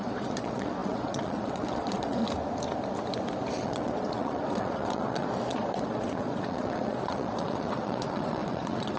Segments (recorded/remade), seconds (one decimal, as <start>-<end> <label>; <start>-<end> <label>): 0.0-2.2 remade; 2.2-3.5 recorded; 3.5-9.0 remade